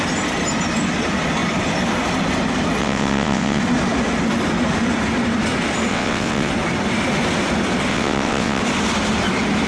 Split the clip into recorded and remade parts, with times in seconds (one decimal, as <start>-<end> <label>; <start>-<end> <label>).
0.0-2.8 recorded; 2.8-3.6 remade; 3.6-5.9 recorded; 5.9-6.5 remade; 6.5-7.9 recorded; 7.9-8.6 remade; 8.6-9.7 recorded